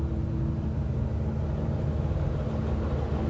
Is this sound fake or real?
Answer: real